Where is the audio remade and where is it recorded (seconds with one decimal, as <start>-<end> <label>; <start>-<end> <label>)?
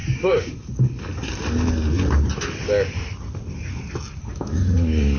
0.0-1.1 remade; 1.1-4.2 recorded; 4.2-5.2 remade